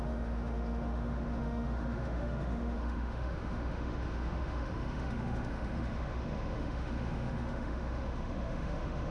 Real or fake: fake